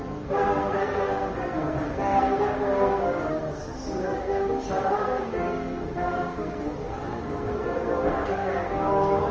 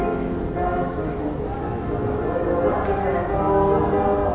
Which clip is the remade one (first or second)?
first